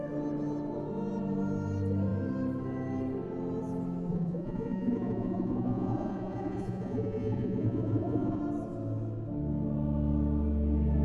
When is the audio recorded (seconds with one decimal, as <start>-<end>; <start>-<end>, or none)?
0.0-4.1; 8.4-11.0